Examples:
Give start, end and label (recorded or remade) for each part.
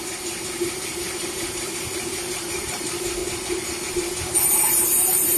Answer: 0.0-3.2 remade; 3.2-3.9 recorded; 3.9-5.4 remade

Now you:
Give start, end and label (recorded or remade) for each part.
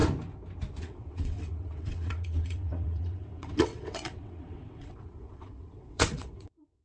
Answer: 0.0-0.8 recorded; 0.8-6.8 remade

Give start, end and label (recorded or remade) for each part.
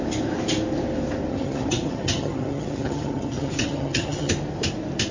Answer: 0.0-1.3 recorded; 1.3-4.3 remade; 4.3-5.1 recorded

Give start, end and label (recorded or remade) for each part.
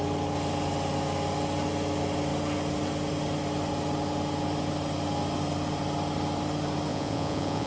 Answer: 0.0-6.9 recorded; 6.9-7.7 remade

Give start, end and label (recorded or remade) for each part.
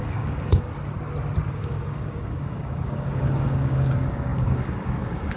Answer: 0.0-0.7 remade; 0.7-1.5 recorded; 1.5-5.4 remade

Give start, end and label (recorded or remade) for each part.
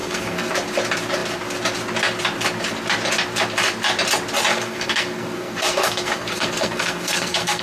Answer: 0.0-0.5 remade; 0.5-4.5 recorded; 4.5-7.6 remade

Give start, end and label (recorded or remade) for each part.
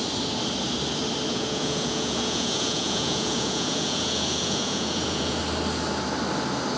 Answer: 0.0-1.3 recorded; 1.3-5.4 remade; 5.4-6.8 recorded